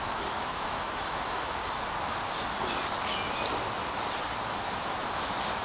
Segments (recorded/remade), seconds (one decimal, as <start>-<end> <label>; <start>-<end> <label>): 0.0-1.6 remade; 1.6-5.0 recorded; 5.0-5.6 remade